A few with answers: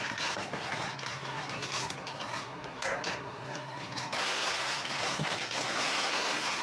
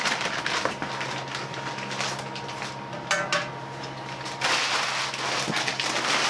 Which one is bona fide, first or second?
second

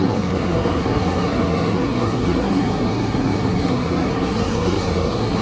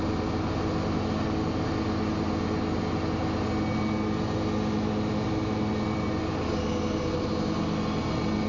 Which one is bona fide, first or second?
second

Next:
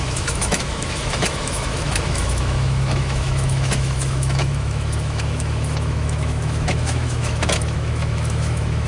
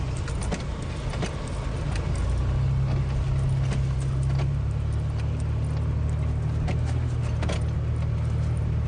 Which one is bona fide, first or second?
second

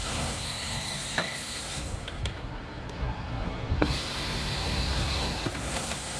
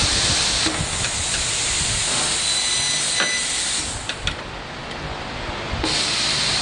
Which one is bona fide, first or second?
second